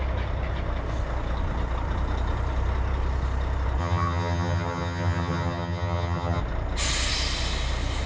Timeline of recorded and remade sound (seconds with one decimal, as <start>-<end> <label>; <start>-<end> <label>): 0.0-3.8 recorded; 3.8-6.4 remade; 6.4-8.1 recorded

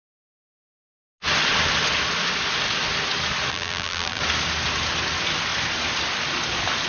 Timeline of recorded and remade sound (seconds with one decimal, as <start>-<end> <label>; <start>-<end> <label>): 0.0-3.5 recorded; 3.5-4.2 remade; 4.2-6.9 recorded

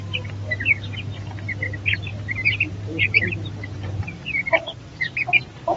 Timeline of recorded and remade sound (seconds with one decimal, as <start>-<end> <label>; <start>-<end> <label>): 0.0-2.1 recorded; 2.1-5.8 remade

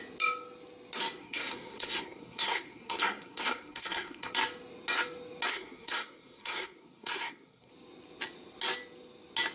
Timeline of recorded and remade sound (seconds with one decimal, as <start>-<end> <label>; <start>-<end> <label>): 0.0-1.2 recorded; 1.2-4.3 remade; 4.3-5.5 recorded; 5.5-7.7 remade; 7.7-9.5 recorded